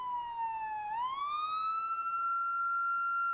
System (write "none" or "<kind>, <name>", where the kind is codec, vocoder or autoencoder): none